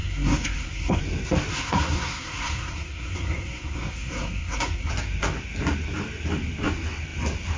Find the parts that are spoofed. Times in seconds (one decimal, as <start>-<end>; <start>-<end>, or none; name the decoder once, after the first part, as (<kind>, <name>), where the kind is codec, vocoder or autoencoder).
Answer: 0.0-1.0 (codec, SNAC); 1.5-4.9